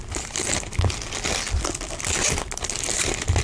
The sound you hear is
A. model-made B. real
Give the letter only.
B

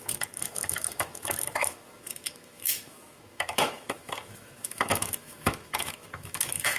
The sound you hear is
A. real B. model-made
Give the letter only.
B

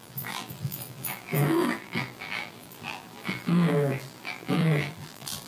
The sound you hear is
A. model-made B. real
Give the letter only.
A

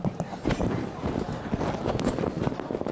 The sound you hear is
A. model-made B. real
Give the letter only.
B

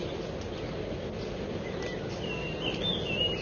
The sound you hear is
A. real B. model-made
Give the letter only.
A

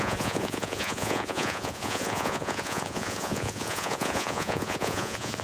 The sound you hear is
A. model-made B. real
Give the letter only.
A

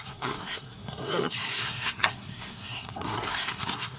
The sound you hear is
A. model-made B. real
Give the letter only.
A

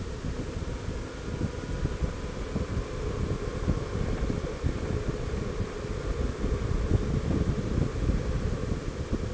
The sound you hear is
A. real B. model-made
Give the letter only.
A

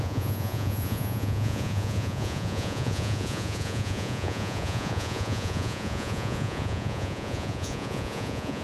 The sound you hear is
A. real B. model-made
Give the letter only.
B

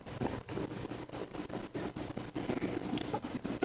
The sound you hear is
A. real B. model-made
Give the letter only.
B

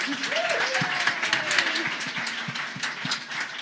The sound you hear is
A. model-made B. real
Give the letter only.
A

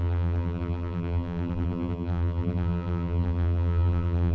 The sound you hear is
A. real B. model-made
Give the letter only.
B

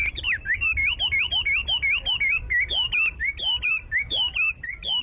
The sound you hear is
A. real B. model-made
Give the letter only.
B